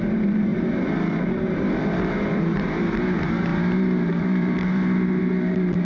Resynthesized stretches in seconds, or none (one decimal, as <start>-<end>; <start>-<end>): 0.0-5.8